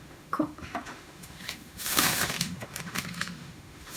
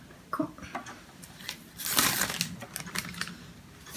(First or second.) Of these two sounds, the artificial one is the first